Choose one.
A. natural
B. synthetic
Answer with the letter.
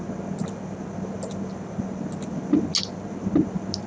A